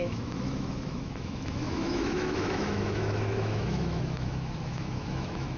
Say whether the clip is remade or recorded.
remade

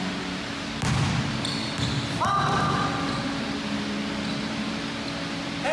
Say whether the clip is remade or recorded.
recorded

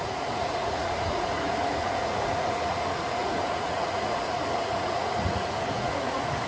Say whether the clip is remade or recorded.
remade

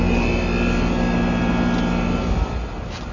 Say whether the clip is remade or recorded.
recorded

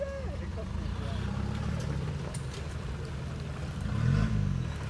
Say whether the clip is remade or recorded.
recorded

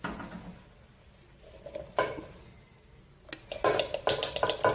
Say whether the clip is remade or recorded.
recorded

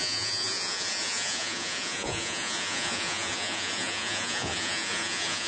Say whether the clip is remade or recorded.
remade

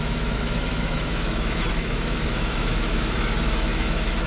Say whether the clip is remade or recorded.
remade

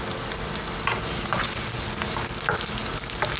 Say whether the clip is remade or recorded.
recorded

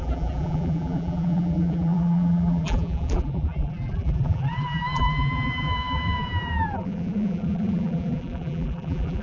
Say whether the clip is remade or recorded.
remade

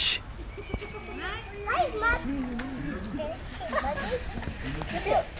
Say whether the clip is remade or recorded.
recorded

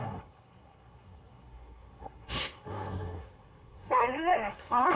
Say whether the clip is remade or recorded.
remade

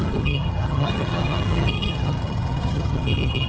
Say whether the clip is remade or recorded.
remade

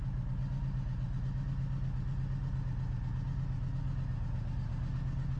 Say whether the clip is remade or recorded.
recorded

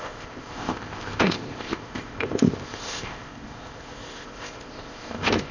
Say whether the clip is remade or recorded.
remade